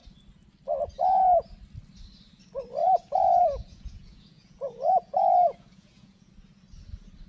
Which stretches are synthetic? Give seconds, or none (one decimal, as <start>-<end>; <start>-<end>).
2.8-6.3

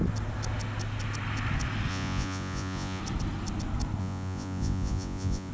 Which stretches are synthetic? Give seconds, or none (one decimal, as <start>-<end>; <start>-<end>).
1.9-3.0; 4.0-5.5

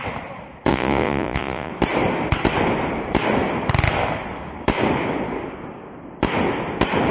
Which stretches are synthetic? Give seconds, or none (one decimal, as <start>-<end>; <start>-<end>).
0.7-1.7

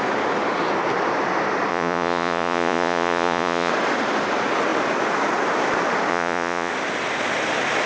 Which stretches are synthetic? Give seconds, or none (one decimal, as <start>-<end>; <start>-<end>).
1.7-3.7; 6.1-6.7

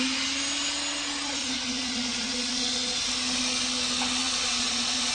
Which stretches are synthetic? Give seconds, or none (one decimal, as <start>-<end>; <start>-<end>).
1.4-3.0; 4.2-5.1

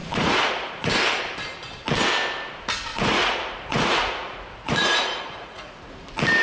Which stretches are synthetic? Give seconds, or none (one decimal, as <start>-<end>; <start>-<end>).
0.0-0.9; 2.9-5.9

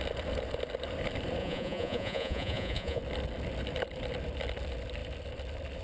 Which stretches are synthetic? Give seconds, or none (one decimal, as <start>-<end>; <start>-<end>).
1.4-3.0

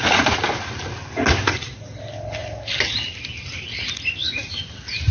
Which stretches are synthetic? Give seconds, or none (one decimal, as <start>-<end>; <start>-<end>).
none